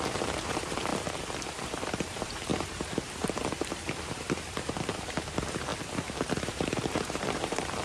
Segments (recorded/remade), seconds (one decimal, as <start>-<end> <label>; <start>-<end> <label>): 0.0-0.9 remade; 0.9-1.6 recorded; 1.6-5.7 remade; 5.7-6.4 recorded; 6.4-7.8 remade